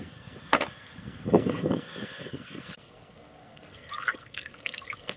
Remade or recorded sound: remade